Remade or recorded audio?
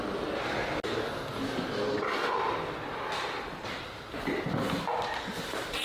recorded